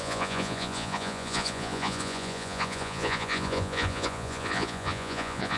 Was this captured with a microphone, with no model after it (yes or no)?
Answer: no